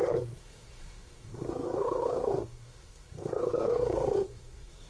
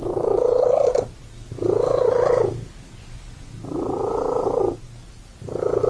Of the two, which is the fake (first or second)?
first